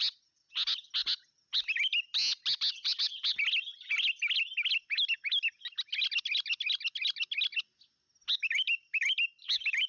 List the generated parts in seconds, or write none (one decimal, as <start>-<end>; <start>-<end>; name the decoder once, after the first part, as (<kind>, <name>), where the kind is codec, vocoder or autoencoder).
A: none